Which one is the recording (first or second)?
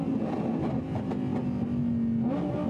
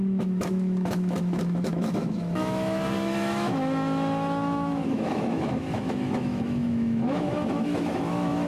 first